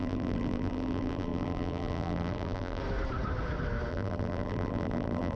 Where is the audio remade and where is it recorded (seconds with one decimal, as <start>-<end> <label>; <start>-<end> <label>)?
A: 0.0-2.8 remade; 2.8-3.9 recorded; 3.9-5.4 remade